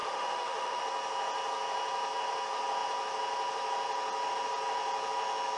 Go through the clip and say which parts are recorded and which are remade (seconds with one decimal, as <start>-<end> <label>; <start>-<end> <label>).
0.0-0.8 remade; 0.8-5.6 recorded